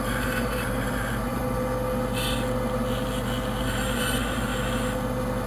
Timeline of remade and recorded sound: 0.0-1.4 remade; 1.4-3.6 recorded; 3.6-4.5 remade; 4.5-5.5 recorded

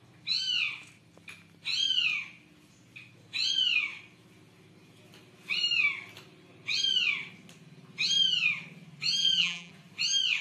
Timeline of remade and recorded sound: 0.0-9.2 recorded; 9.2-9.7 remade; 9.7-10.4 recorded

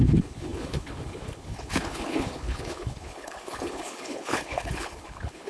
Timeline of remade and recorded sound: 0.0-5.5 remade

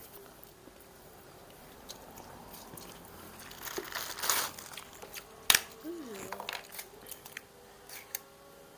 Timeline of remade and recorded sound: 0.0-2.4 remade; 2.4-8.8 recorded